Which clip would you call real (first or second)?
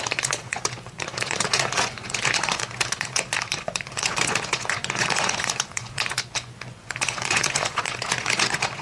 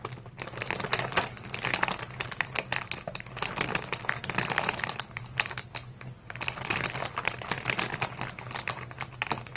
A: second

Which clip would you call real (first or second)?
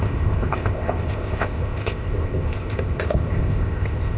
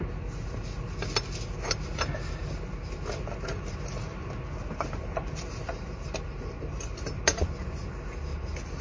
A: second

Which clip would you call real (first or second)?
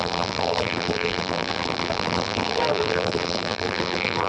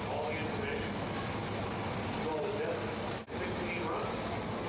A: second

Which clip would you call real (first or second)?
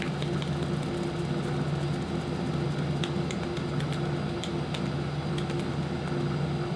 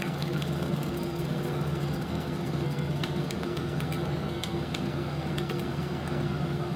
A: first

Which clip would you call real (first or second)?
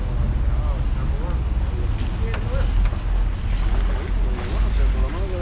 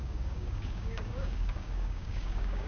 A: first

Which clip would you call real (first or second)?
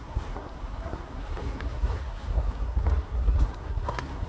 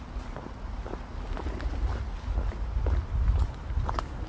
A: second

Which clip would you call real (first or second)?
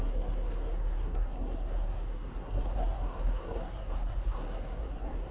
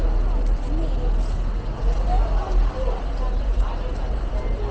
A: second